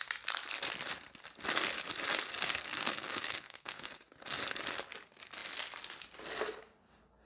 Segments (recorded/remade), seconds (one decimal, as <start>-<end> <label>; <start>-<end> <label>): 0.0-2.4 recorded; 2.4-4.0 remade; 4.0-7.3 recorded